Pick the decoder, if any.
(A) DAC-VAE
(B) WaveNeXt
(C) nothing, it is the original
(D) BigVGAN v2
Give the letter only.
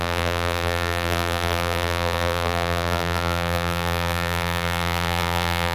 D